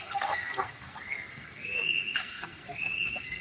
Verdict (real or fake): fake